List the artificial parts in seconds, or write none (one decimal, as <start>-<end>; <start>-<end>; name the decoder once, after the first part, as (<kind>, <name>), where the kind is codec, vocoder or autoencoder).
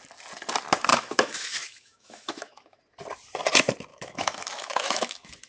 0.9-2.8 (autoencoder, DAC-VAE); 3.9-5.5